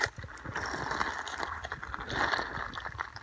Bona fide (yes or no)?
yes